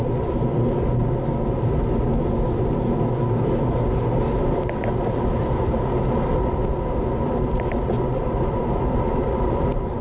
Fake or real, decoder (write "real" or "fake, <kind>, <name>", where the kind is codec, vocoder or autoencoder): real